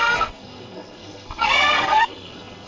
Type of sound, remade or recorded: remade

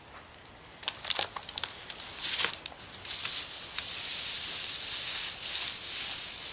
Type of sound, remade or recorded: recorded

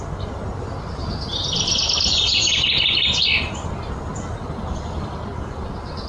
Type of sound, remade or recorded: recorded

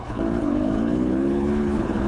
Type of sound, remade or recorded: remade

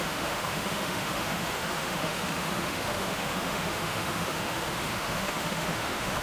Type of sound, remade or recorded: remade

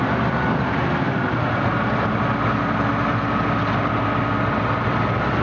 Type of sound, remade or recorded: recorded